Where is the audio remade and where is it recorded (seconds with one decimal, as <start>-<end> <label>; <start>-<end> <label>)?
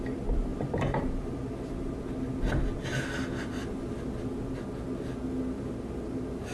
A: 0.0-0.5 recorded; 0.5-2.0 remade; 2.0-6.5 recorded